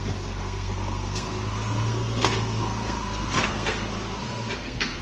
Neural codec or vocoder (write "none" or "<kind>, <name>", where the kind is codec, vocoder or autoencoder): codec, SNAC